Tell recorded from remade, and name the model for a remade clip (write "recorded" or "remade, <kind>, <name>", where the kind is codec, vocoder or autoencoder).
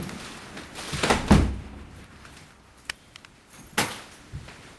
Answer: recorded